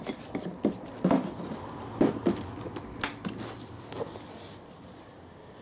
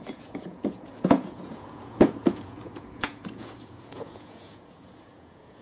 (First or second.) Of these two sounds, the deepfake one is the second